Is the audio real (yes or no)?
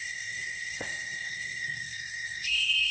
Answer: no